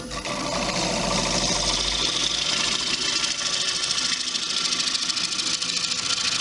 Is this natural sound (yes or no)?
yes